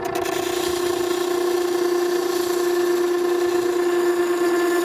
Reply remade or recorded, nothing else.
recorded